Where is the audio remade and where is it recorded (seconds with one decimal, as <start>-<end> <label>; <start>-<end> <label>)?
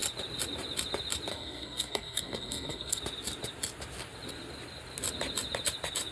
0.0-1.3 recorded; 1.3-3.0 remade; 3.0-6.1 recorded